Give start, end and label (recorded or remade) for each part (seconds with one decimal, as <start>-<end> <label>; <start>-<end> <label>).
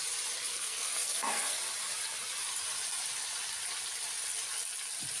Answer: 0.0-0.5 recorded; 0.5-1.6 remade; 1.6-5.2 recorded